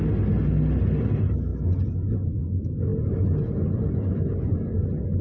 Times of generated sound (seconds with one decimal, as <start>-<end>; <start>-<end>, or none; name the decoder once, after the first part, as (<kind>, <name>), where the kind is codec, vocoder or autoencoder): none